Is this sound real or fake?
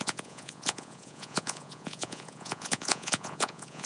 fake